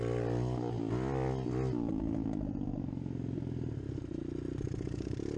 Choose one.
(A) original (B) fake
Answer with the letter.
A